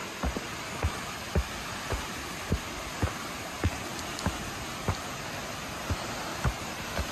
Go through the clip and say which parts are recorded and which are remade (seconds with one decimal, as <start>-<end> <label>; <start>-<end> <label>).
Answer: 0.0-7.1 recorded

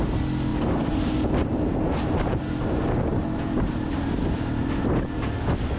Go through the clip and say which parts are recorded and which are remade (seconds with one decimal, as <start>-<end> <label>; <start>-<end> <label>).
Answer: 0.0-0.5 recorded; 0.5-1.1 remade; 1.1-1.7 recorded; 1.7-5.2 remade; 5.2-5.8 recorded

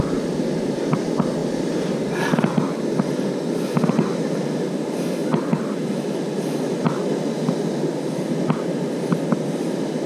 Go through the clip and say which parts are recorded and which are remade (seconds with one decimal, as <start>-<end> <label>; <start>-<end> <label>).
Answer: 0.0-1.4 recorded; 1.4-2.4 remade; 2.4-10.1 recorded

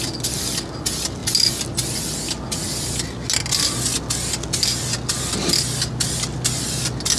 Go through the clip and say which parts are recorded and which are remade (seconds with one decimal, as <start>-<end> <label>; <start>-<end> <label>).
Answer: 0.0-7.2 recorded

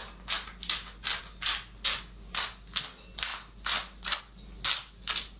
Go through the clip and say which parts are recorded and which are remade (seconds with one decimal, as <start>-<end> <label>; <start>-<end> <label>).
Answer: 0.0-5.4 recorded

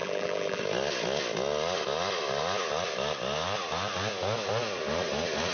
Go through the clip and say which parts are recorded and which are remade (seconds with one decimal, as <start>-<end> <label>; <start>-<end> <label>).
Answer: 0.0-0.6 remade; 0.6-5.5 recorded